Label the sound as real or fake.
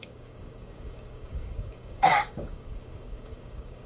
fake